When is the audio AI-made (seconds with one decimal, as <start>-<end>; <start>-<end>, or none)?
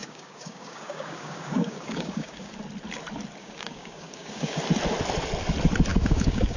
0.0-2.5; 3.4-4.6; 5.9-6.6